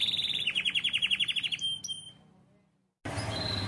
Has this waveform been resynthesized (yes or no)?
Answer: no